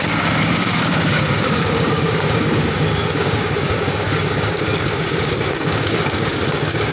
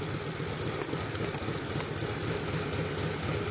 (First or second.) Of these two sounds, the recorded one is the second